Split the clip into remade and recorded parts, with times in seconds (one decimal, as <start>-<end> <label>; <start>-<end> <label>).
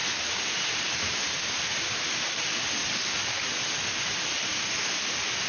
0.0-5.5 recorded